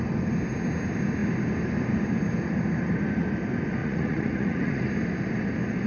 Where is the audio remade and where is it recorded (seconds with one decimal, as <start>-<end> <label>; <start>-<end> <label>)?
0.0-3.8 recorded; 3.8-4.9 remade; 4.9-5.9 recorded